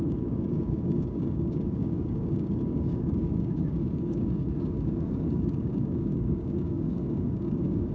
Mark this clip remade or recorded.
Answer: remade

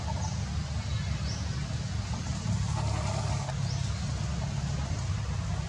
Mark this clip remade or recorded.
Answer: recorded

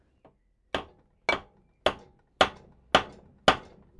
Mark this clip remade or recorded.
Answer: recorded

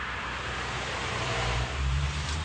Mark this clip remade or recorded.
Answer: remade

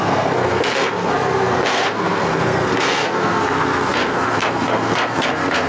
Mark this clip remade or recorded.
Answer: remade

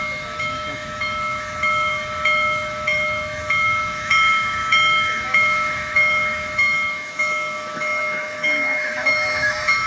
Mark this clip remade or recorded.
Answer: remade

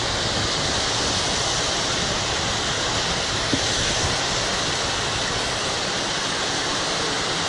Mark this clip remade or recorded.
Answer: recorded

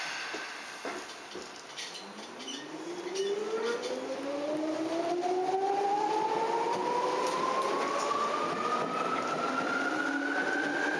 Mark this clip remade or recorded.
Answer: recorded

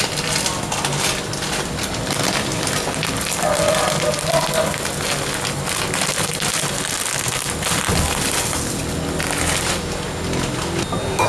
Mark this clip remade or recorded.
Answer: recorded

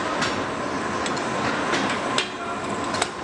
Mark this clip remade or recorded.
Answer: recorded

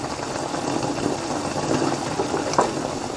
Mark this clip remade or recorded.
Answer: recorded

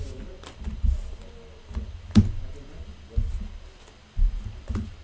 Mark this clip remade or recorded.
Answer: recorded